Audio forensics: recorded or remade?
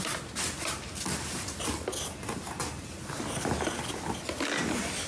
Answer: recorded